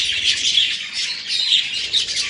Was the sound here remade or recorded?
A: remade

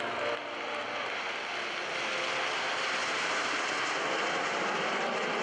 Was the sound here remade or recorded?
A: recorded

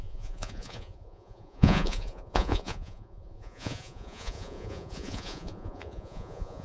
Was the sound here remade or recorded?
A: remade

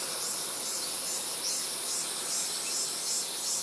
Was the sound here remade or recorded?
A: recorded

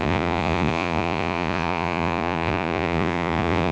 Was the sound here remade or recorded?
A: remade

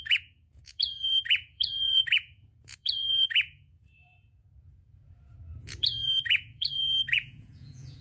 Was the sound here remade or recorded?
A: remade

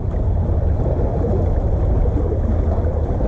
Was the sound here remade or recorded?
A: recorded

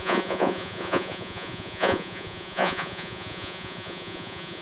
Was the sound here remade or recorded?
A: remade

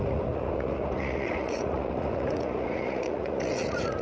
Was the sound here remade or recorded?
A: remade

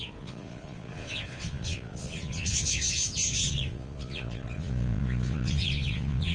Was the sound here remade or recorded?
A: remade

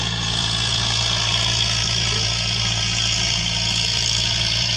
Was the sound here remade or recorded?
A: remade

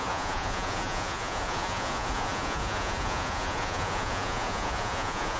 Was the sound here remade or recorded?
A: remade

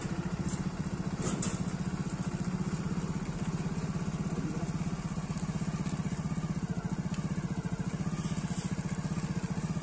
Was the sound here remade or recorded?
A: recorded